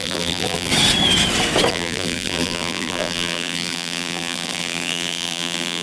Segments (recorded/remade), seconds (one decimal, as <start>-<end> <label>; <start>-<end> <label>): 0.0-0.7 remade; 0.7-1.7 recorded; 1.7-5.8 remade